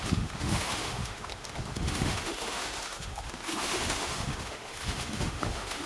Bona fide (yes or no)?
no